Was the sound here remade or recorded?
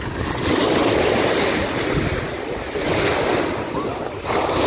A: recorded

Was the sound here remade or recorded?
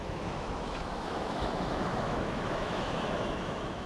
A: remade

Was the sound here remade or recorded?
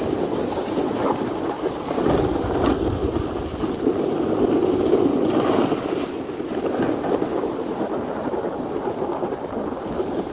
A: recorded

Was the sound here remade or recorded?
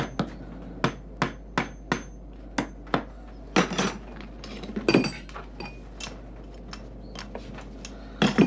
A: recorded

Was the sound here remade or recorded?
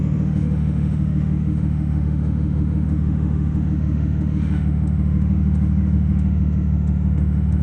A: remade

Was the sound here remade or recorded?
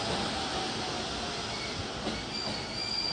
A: recorded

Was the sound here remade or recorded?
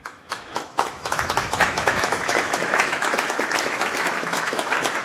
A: remade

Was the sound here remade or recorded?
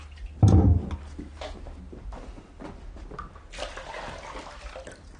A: recorded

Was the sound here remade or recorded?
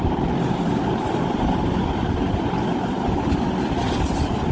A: recorded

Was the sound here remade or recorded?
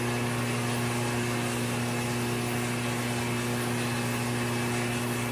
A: recorded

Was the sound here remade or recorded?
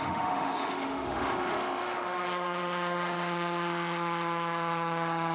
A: remade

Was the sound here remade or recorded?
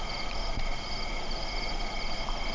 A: recorded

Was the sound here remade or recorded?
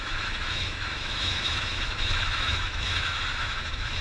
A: remade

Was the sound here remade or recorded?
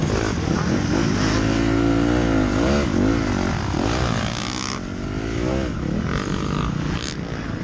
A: recorded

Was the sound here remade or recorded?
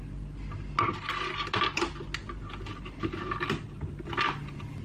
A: recorded